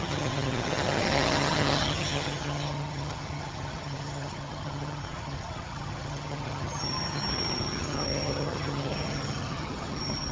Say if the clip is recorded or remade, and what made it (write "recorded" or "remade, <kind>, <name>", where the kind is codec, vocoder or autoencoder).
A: remade, vocoder, HiFi-GAN